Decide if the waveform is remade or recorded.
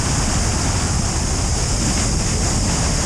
recorded